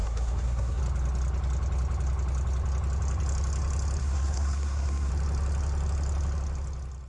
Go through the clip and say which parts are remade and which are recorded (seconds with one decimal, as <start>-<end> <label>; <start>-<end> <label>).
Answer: 0.0-0.8 remade; 0.8-4.0 recorded; 4.0-5.1 remade; 5.1-7.1 recorded